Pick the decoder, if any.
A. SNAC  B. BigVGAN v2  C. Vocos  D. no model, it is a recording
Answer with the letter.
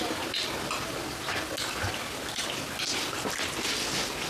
D